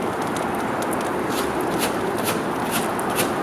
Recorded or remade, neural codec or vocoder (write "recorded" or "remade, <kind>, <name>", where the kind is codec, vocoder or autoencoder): recorded